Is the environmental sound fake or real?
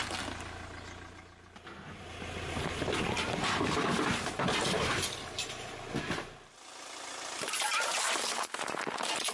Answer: real